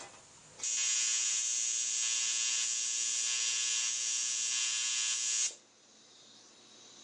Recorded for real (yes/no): yes